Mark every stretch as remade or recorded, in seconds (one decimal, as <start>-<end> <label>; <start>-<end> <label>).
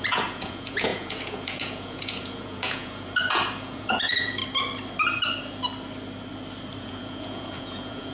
0.0-4.4 remade; 4.4-6.8 recorded; 6.8-8.1 remade